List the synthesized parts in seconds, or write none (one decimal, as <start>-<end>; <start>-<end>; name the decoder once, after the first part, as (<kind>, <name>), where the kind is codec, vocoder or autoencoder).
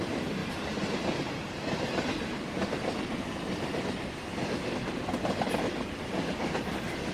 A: none